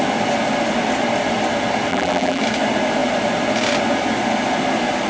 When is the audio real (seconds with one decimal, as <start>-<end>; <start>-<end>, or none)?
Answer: 0.0-1.9; 2.4-5.1